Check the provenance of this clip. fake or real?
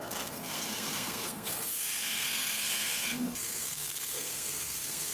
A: fake